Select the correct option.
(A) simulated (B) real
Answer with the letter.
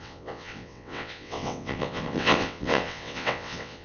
A